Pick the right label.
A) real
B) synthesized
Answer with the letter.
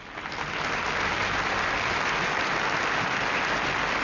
A